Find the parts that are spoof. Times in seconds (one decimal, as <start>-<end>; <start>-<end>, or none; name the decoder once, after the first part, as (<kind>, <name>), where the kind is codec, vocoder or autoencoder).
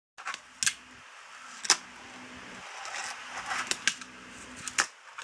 none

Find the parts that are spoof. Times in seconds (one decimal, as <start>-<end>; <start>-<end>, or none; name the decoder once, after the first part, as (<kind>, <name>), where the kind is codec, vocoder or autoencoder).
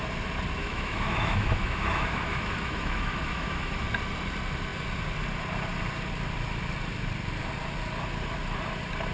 0.6-3.8 (autoencoder, DAC-VAE)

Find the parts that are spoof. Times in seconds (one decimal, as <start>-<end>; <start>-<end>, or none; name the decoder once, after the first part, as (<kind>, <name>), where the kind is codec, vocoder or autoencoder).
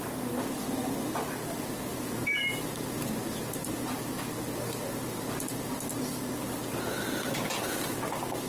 1.9-5.9 (vocoder, BigVGAN v2)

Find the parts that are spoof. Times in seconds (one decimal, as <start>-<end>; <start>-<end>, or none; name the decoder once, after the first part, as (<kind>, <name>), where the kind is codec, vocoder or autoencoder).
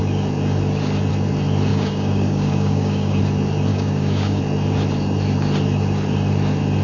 1.7-3.2 (codec, DAC); 3.7-4.4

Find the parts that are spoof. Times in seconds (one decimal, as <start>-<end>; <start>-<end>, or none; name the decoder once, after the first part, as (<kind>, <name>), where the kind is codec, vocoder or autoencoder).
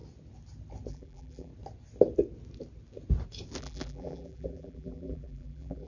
0.9-1.5 (vocoder, BigVGAN v2); 3.6-5.9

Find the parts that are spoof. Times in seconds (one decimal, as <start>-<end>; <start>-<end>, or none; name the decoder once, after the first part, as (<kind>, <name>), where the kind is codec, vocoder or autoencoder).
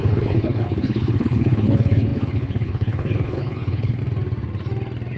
0.0-4.0 (codec, HILCodec)